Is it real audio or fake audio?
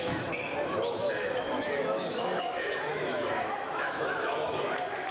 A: fake